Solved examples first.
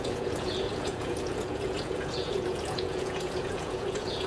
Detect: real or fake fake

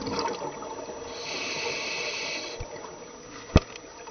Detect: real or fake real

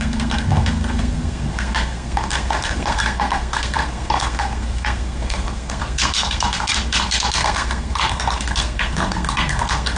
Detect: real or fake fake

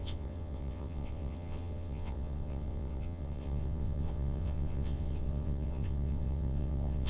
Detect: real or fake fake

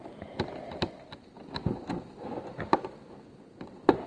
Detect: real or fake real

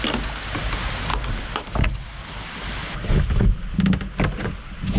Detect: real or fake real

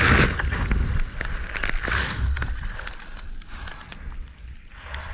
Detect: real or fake real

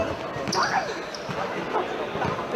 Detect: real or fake real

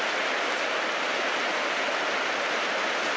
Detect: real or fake real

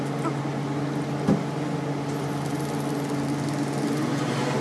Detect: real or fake real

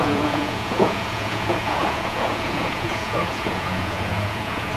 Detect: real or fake fake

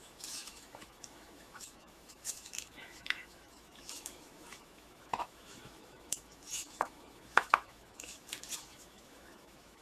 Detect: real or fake fake